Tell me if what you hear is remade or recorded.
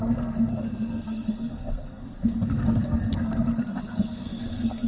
remade